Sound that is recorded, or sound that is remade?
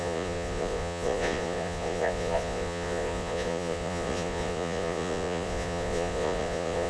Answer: remade